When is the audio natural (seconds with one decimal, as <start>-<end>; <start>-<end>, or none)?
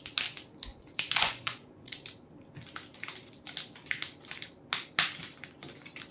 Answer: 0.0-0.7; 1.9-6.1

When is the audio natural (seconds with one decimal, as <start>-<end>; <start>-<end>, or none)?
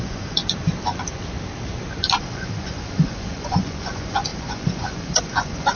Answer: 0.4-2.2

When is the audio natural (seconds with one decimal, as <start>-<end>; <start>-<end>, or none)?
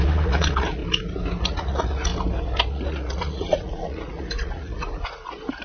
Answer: 0.8-1.4; 2.1-2.7